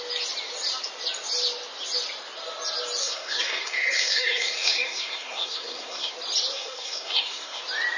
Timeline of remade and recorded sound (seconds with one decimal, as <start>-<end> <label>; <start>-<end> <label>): 0.0-3.0 recorded; 3.0-6.1 remade; 6.1-6.5 recorded; 6.5-7.6 remade; 7.6-8.0 recorded